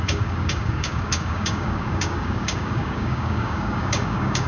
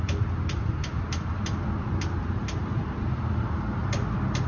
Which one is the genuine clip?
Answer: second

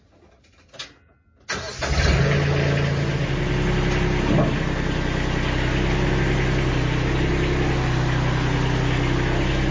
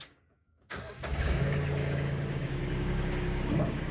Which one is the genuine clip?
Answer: first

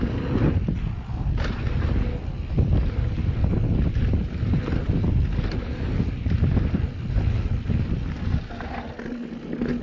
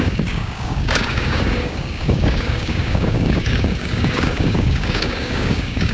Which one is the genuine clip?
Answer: first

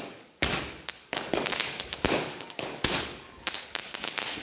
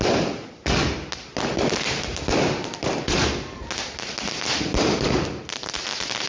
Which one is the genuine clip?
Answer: second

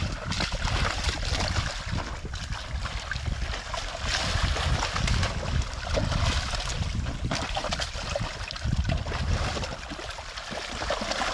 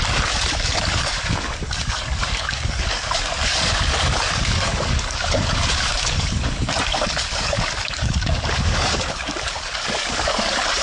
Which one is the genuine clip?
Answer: first